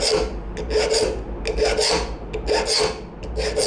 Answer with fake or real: real